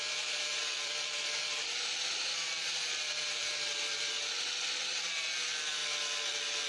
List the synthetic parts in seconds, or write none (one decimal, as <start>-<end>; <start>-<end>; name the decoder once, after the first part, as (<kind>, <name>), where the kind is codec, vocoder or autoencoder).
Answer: 0.0-5.8 (vocoder, BigVGAN v2); 6.3-6.7